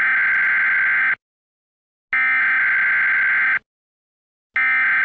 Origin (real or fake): real